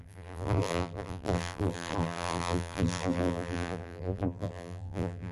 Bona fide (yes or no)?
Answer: no